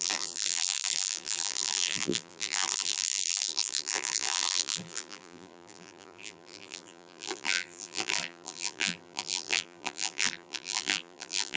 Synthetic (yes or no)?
yes